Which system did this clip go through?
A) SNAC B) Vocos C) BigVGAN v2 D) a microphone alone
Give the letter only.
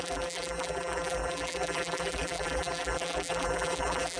C